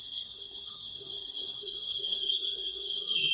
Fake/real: fake